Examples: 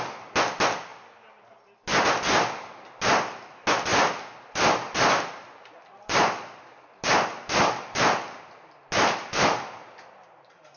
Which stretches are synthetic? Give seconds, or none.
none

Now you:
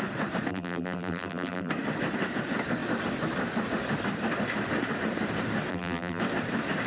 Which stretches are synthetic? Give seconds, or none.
0.5-1.7 (vocoder, BigVGAN v2); 5.7-6.2

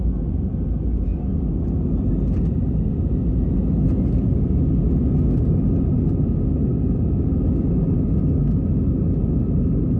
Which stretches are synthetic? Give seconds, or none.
none

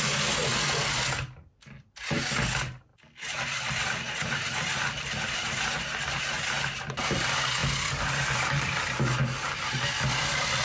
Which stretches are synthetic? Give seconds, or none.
none